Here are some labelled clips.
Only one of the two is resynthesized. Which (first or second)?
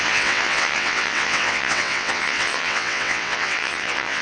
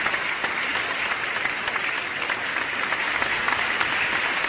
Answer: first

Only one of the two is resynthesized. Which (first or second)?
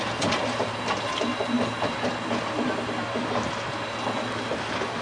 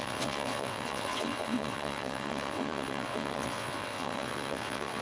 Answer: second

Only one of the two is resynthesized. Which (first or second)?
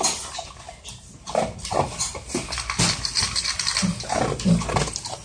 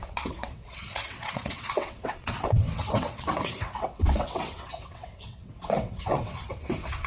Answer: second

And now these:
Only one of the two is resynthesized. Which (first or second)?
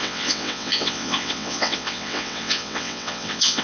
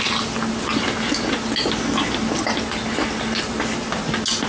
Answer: first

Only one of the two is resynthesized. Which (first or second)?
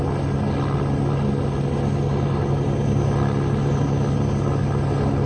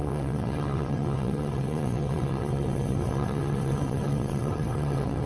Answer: second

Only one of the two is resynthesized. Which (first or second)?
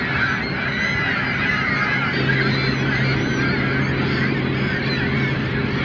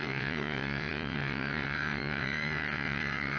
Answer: second